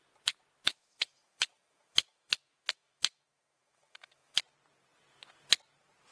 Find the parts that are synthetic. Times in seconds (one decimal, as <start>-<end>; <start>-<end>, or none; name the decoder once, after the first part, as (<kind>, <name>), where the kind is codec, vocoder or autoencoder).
0.7-4.4 (autoencoder, DAC-VAE)